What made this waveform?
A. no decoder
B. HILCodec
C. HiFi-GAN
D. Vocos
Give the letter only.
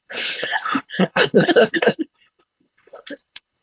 B